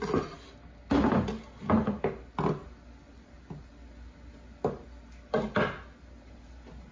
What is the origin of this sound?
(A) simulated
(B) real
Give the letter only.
B